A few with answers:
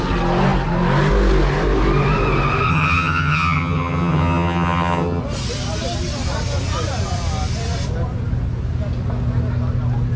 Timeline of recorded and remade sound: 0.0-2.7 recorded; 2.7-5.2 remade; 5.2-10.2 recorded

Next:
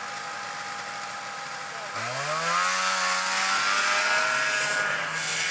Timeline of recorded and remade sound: 0.0-5.5 recorded

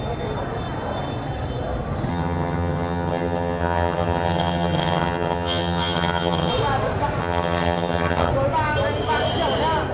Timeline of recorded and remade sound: 0.0-2.1 recorded; 2.1-6.5 remade; 6.5-7.2 recorded; 7.2-8.3 remade; 8.3-9.9 recorded

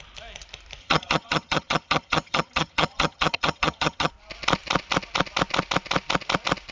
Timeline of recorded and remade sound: 0.0-0.8 recorded; 0.8-4.1 remade; 4.1-6.7 recorded

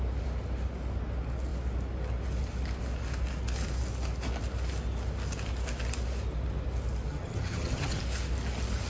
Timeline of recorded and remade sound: 0.0-7.1 recorded; 7.1-8.0 remade; 8.0-8.9 recorded

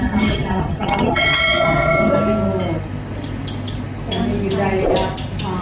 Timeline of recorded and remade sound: 0.0-2.1 remade; 2.1-5.6 recorded

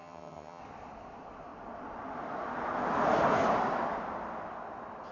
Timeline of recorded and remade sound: 0.0-0.6 remade; 0.6-5.1 recorded

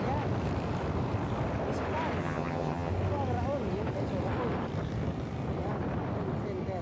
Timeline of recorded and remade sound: 0.0-2.2 recorded; 2.2-2.9 remade; 2.9-6.8 recorded